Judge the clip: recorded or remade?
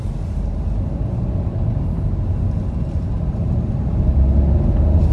recorded